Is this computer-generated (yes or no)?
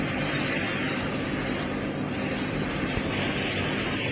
no